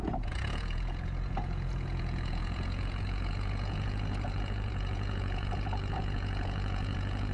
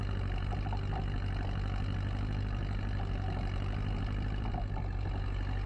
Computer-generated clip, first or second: first